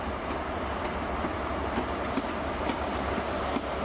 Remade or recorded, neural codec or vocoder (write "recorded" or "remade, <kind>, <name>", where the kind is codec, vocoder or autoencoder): remade, vocoder, BigVGAN v2